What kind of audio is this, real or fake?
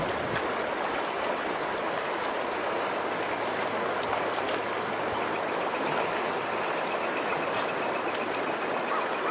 real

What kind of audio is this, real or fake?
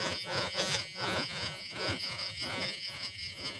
fake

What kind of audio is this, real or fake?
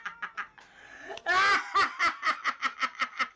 real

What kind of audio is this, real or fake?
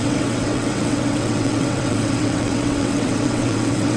fake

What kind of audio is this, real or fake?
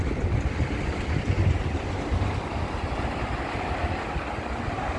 real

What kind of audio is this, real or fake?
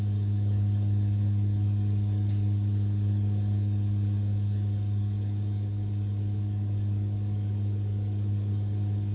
fake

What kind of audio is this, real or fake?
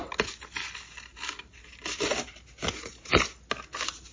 real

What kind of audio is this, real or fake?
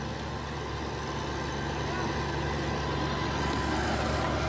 real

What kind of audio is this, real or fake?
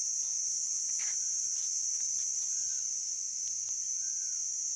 real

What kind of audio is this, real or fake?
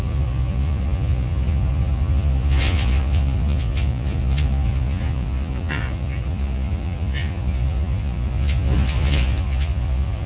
fake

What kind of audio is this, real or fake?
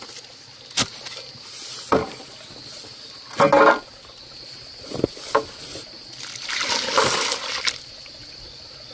real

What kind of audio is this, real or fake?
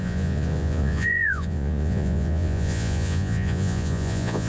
fake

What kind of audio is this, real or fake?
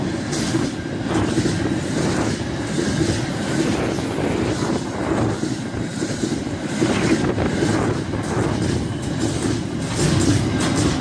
real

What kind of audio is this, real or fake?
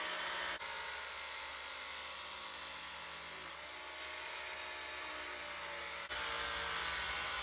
real